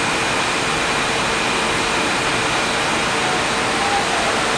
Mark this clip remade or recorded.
recorded